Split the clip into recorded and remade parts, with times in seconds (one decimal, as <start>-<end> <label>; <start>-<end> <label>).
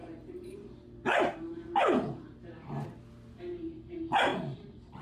0.0-3.0 remade; 3.0-5.0 recorded